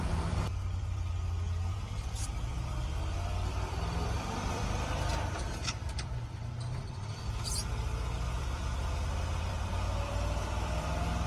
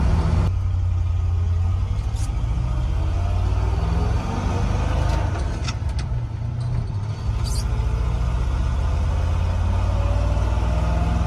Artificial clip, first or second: first